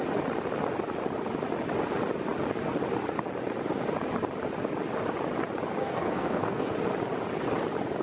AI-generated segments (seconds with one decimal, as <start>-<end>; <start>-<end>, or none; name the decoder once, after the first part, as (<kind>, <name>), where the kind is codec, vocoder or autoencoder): 5.8-6.7 (codec, SNAC)